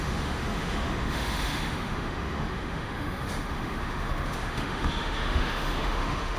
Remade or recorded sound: remade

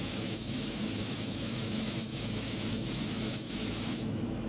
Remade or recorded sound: remade